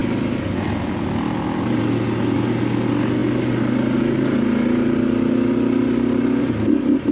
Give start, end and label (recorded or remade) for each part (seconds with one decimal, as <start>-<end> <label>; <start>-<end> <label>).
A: 0.0-7.1 recorded